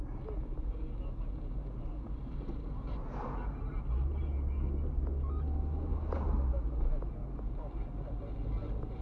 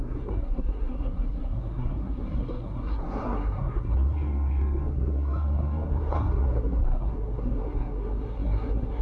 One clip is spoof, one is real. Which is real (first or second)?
first